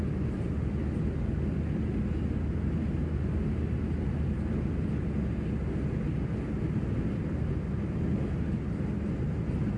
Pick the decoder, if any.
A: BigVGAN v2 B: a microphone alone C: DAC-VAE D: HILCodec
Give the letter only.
B